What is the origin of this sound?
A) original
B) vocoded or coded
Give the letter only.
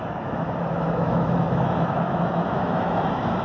B